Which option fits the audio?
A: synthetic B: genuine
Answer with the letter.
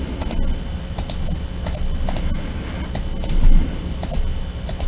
B